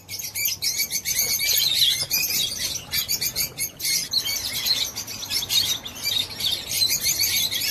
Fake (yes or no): no